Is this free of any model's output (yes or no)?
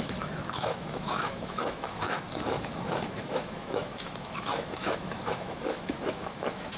no